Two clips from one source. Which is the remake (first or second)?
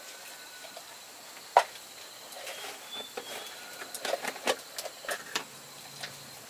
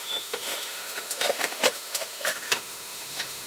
second